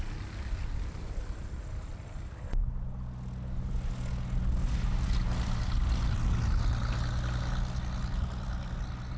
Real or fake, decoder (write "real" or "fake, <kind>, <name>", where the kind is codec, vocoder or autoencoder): real